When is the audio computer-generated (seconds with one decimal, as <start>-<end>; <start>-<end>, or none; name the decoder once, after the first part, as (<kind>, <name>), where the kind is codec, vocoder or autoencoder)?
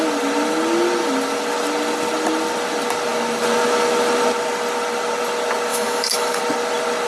5.7-6.4 (autoencoder, DAC-VAE)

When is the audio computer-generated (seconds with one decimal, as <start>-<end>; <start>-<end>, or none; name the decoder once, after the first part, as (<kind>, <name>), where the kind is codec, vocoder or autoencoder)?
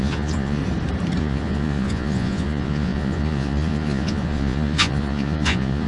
0.0-0.6 (vocoder, Vocos); 1.2-5.9